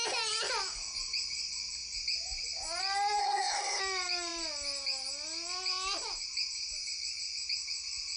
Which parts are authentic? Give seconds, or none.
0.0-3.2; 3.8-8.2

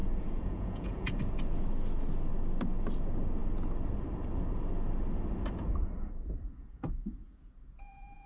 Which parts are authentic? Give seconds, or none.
1.2-6.6

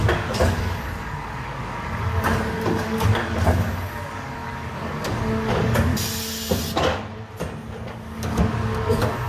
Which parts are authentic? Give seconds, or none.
5.9-7.9

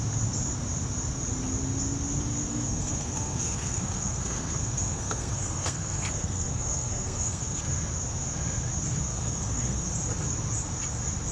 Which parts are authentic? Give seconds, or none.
0.0-2.5; 7.6-9.1; 9.9-11.3

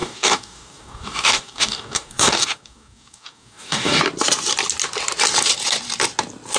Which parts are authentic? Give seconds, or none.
4.0-6.6

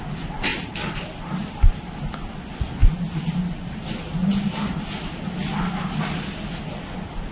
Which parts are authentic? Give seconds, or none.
0.0-0.5; 1.6-7.3